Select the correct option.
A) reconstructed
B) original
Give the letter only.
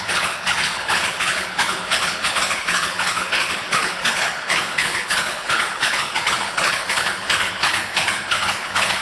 A